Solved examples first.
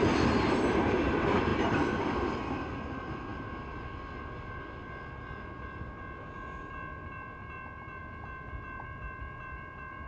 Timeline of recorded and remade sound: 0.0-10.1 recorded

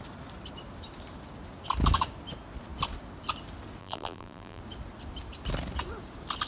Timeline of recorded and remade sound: 0.0-3.8 recorded; 3.8-4.6 remade; 4.6-6.5 recorded

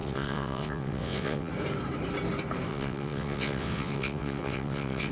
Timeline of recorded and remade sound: 0.0-1.5 remade; 1.5-2.7 recorded; 2.7-5.1 remade

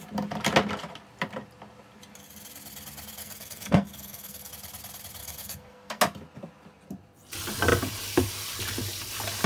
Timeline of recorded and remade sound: 0.0-3.2 recorded; 3.2-4.5 remade; 4.5-5.2 recorded; 5.2-6.0 remade; 6.0-9.5 recorded

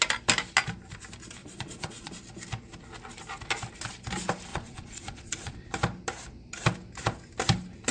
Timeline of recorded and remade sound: 0.0-1.4 recorded; 1.4-2.1 remade; 2.1-4.5 recorded; 4.5-5.7 remade; 5.7-7.9 recorded

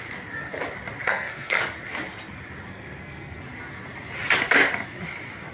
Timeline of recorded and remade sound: 0.0-1.0 recorded; 1.0-1.6 remade; 1.6-2.7 recorded; 2.7-3.4 remade; 3.4-5.5 recorded